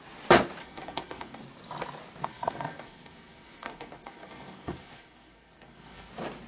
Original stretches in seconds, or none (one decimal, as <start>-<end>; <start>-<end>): 0.0-0.6; 1.4-2.2; 6.1-6.5